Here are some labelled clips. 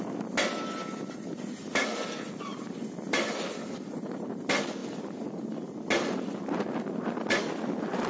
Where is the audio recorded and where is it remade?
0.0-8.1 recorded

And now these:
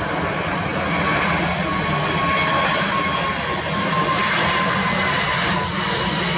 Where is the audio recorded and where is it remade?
0.0-6.4 recorded

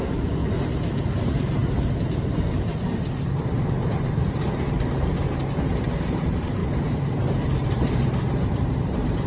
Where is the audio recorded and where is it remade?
0.0-0.4 remade; 0.4-1.2 recorded; 1.2-9.3 remade

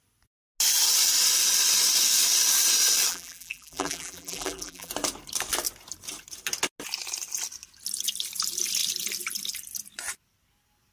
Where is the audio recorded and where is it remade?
0.0-3.1 recorded; 3.1-4.9 remade; 4.9-10.9 recorded

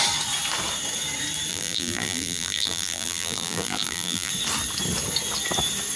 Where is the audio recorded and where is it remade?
0.0-1.5 recorded; 1.5-4.3 remade; 4.3-6.0 recorded

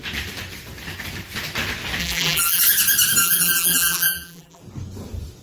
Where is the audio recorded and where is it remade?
0.0-2.0 recorded; 2.0-2.6 remade; 2.6-3.2 recorded; 3.2-4.6 remade; 4.6-5.4 recorded

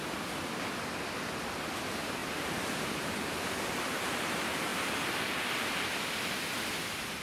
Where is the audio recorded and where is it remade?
0.0-7.2 recorded

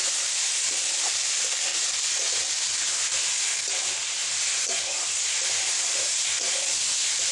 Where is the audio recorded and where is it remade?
0.0-1.7 remade; 1.7-3.7 recorded; 3.7-7.3 remade